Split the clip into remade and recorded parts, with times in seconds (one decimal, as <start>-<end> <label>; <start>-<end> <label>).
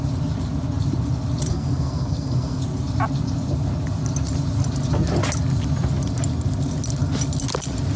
0.0-1.5 recorded; 1.5-2.6 remade; 2.6-8.0 recorded